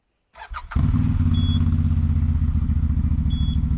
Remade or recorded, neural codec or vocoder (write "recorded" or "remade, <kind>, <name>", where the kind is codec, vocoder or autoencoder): recorded